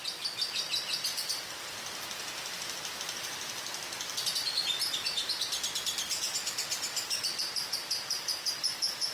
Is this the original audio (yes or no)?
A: no